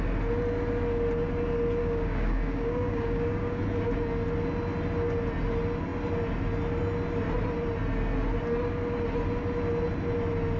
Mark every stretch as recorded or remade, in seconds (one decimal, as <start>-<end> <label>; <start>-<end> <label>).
0.0-1.8 recorded; 1.8-3.6 remade; 3.6-10.6 recorded